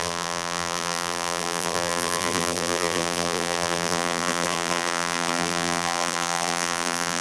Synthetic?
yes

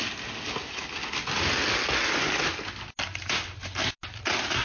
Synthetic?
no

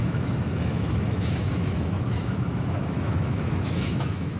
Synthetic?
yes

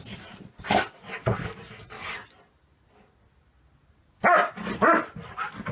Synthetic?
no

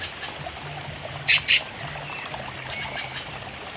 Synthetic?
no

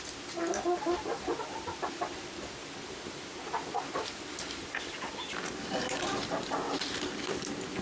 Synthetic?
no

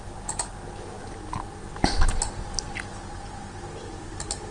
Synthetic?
no